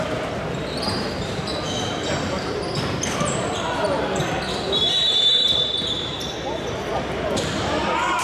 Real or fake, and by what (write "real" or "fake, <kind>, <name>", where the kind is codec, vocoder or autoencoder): fake, vocoder, BigVGAN v2